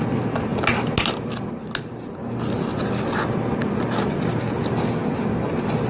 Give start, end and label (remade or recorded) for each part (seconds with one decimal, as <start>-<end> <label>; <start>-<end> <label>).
0.0-2.7 recorded; 2.7-3.3 remade; 3.3-5.0 recorded; 5.0-5.5 remade; 5.5-5.9 recorded